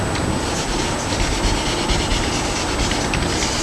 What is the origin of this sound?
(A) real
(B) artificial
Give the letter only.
A